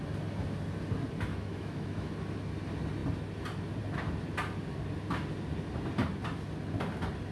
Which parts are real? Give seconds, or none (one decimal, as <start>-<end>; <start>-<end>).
0.0-1.3; 2.1-7.3

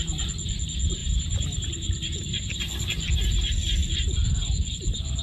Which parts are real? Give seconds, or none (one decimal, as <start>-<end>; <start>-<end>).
0.0-1.0; 2.6-5.2

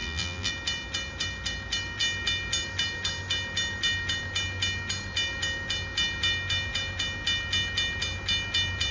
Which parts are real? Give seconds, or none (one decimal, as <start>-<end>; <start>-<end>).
0.5-8.9

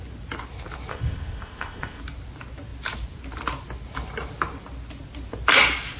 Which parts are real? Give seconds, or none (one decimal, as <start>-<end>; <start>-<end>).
0.0-0.9; 2.0-6.0

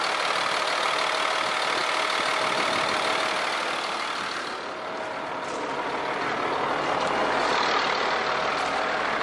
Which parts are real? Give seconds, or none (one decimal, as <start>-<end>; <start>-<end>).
0.0-9.2

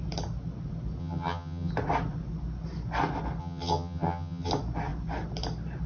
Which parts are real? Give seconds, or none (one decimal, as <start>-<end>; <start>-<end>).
0.0-1.0; 1.7-3.4; 4.5-5.9

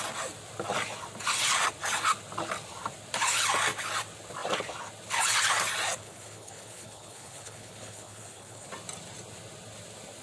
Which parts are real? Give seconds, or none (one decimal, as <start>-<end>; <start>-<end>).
0.0-6.0; 8.7-10.2